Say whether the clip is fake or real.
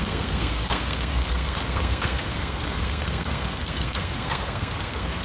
fake